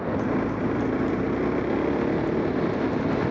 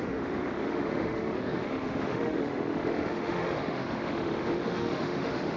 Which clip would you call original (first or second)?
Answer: first